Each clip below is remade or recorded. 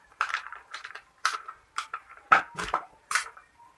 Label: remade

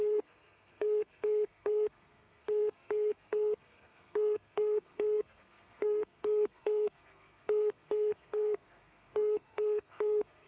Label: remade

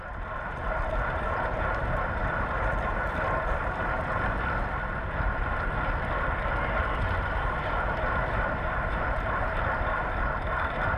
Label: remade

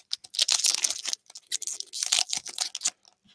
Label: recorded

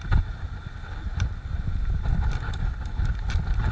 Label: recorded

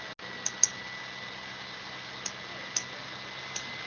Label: recorded